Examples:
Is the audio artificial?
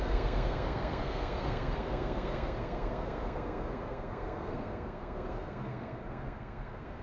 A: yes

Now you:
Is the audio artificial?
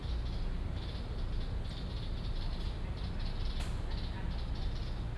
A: no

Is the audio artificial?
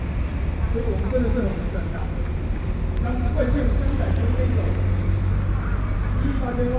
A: no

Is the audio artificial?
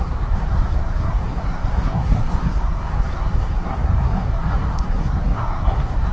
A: yes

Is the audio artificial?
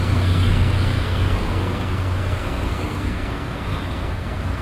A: yes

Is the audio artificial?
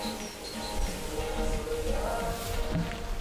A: no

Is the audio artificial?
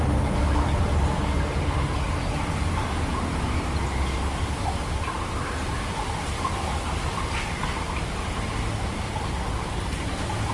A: no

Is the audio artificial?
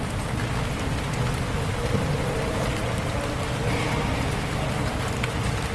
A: no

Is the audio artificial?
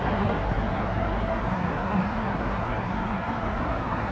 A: yes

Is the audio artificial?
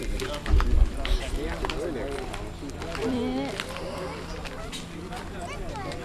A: no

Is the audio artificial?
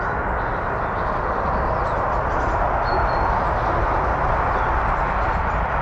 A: no